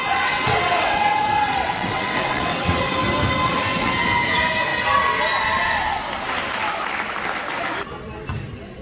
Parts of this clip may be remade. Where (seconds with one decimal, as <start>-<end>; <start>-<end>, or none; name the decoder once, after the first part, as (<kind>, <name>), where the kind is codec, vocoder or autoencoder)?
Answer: 0.0-2.9 (vocoder, WaveNeXt); 3.4-3.9